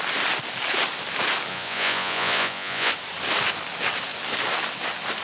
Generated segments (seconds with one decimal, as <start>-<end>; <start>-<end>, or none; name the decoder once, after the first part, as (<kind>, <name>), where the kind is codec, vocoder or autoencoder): 1.5-2.9 (vocoder, Vocos)